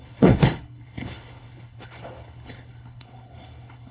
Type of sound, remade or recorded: remade